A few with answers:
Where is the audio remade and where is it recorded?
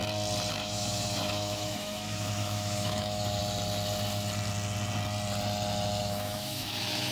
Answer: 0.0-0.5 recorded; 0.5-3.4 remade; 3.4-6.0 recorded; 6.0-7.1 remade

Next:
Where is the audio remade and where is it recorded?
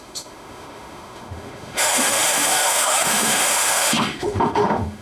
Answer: 0.0-5.0 remade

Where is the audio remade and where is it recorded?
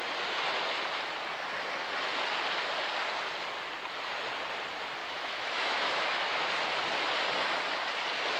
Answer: 0.0-5.0 recorded; 5.0-6.5 remade; 6.5-8.4 recorded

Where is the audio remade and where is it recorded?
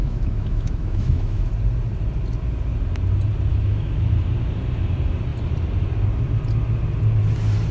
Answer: 0.0-1.5 remade; 1.5-3.5 recorded; 3.5-4.1 remade; 4.1-7.7 recorded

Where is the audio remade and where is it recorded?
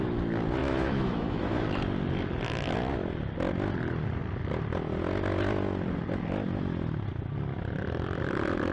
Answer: 0.0-0.6 recorded; 0.6-1.8 remade; 1.8-8.7 recorded